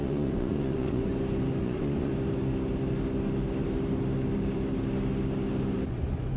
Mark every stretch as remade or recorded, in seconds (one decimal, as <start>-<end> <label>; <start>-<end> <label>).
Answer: 0.0-1.1 remade; 1.1-1.6 recorded; 1.6-2.1 remade; 2.1-5.9 recorded; 5.9-6.4 remade